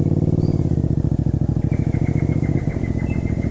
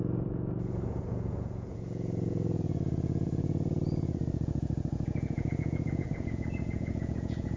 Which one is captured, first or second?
first